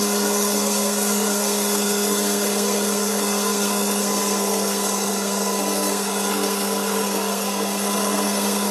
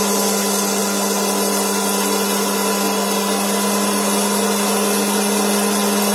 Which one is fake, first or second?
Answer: first